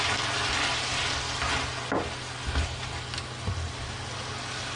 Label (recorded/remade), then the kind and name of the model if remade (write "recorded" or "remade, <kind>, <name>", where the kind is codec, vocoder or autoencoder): recorded